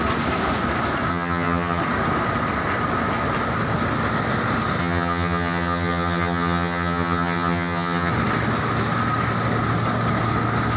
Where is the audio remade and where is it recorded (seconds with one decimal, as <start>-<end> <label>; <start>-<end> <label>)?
0.0-1.1 recorded; 1.1-1.8 remade; 1.8-4.8 recorded; 4.8-8.1 remade; 8.1-10.8 recorded